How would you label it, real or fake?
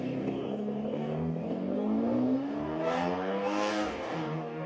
fake